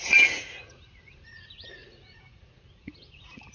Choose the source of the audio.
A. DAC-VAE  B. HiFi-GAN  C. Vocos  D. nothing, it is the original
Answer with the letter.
C